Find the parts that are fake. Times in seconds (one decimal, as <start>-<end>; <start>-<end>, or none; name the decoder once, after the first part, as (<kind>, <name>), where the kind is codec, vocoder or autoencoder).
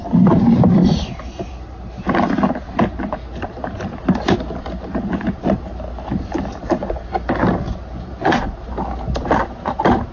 none